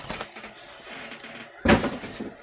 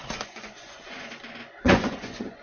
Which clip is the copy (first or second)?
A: second